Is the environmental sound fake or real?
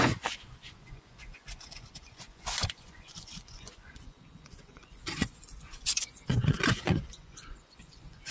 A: fake